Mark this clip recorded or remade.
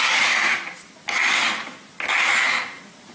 recorded